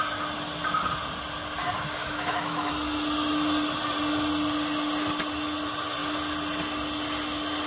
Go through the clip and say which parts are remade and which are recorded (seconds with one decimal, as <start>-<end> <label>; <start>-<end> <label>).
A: 0.0-2.0 recorded; 2.0-2.7 remade; 2.7-7.7 recorded